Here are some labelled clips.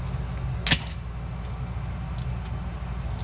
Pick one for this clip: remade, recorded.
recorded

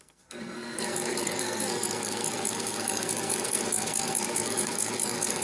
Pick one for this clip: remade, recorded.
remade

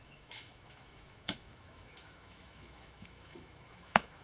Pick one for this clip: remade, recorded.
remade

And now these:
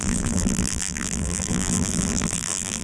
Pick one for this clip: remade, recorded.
remade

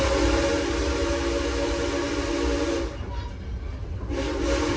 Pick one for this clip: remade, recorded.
recorded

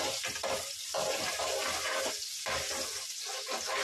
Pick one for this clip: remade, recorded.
recorded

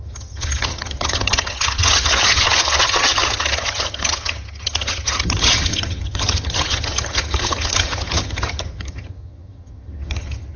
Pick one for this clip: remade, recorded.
remade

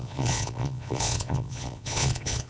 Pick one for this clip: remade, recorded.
remade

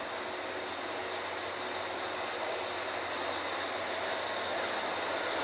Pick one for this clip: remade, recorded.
recorded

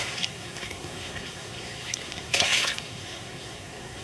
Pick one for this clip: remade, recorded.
remade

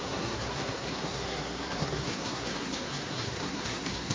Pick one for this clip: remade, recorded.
remade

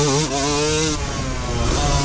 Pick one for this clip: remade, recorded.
recorded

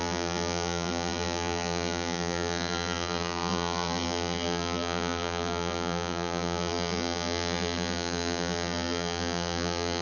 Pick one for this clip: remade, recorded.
remade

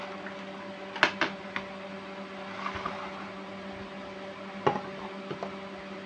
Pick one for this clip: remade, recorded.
recorded